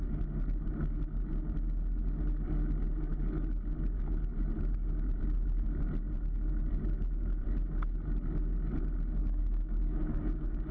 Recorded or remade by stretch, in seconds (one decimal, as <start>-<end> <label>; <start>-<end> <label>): 0.0-9.2 recorded; 9.2-10.7 remade

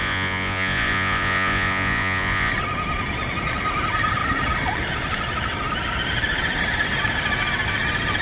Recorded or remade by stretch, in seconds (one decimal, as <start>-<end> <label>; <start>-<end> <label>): 0.0-2.5 remade; 2.5-8.2 recorded

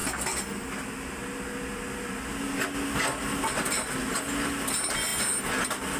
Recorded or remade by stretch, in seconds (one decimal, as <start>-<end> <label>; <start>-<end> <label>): 0.0-6.0 recorded